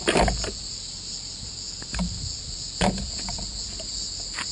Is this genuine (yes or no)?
yes